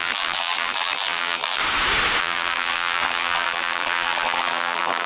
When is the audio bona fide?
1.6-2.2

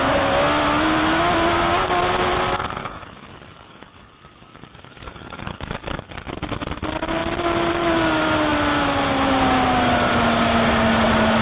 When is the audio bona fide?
0.0-2.8; 6.3-11.4

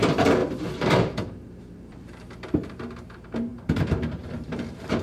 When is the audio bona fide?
none